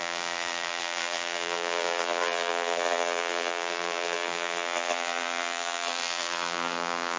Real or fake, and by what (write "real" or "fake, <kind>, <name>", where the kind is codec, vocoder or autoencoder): fake, vocoder, BigVGAN v2